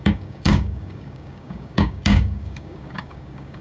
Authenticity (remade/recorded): remade